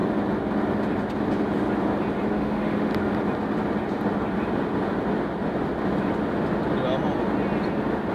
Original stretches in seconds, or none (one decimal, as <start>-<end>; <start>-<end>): 0.0-2.3; 2.9-8.1